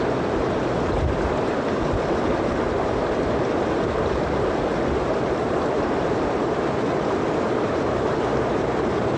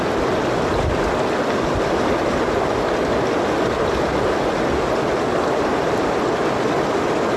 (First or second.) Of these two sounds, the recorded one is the second